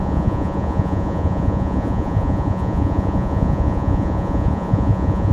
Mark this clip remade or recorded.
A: remade